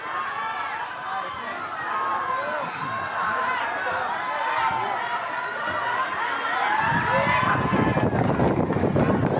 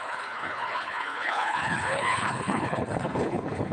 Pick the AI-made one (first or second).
second